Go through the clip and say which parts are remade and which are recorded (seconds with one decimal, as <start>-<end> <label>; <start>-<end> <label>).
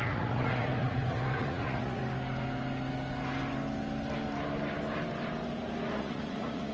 0.0-2.0 remade; 2.0-5.9 recorded; 5.9-6.7 remade